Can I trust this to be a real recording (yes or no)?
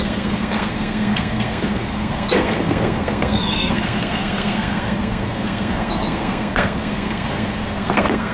no